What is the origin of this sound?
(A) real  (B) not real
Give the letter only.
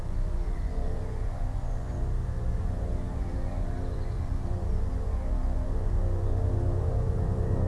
B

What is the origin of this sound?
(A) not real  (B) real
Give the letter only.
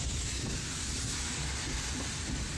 B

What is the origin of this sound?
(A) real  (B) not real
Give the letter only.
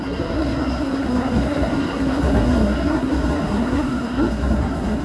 B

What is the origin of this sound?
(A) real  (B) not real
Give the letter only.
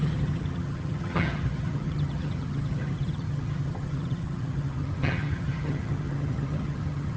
B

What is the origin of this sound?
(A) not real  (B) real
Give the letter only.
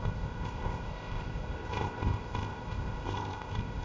A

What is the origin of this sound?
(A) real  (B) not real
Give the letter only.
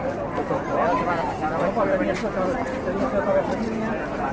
A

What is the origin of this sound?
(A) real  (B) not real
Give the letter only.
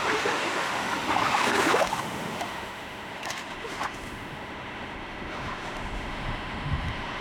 B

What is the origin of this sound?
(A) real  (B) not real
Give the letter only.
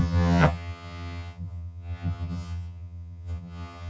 B